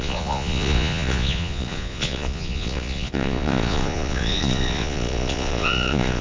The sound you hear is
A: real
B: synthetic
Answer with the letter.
B